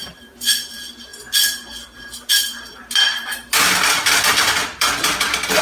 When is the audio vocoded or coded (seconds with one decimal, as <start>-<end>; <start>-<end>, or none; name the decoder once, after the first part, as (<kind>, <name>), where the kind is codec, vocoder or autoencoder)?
0.0-1.1 (vocoder, BigVGAN v2); 2.3-5.6